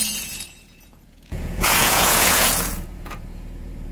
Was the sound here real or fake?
fake